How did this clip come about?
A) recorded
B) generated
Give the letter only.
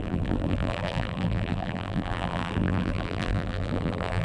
B